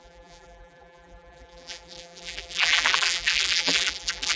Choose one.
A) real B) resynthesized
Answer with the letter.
B